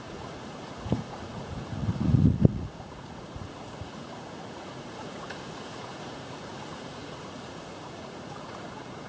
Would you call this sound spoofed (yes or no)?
yes